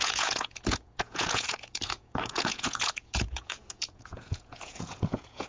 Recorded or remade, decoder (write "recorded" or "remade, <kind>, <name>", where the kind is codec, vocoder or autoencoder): remade, vocoder, Vocos